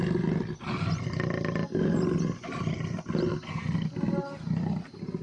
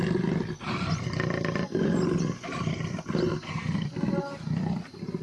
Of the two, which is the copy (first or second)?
second